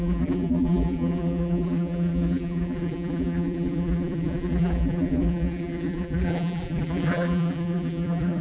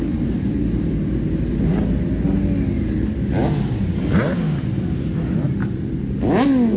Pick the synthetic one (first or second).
first